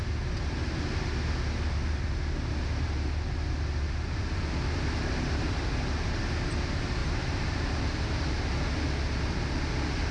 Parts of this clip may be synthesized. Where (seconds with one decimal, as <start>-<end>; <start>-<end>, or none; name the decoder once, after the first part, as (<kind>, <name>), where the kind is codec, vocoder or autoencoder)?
7.0-7.8 (vocoder, BigVGAN v2)

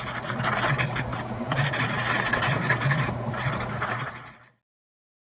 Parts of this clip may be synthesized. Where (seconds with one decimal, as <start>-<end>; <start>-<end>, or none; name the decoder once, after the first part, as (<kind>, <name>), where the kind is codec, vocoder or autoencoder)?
1.1-4.1 (vocoder, BigVGAN v2)

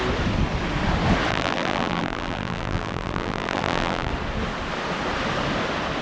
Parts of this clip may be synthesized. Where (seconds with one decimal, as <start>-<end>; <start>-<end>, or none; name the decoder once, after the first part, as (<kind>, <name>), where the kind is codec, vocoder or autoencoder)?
1.3-4.1 (vocoder, BigVGAN v2)